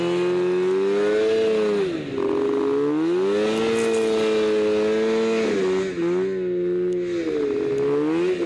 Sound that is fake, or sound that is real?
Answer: real